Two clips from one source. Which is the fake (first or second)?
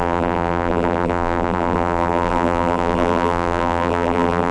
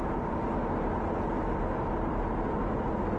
first